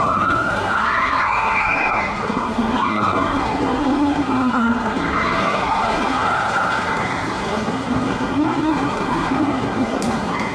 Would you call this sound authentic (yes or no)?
no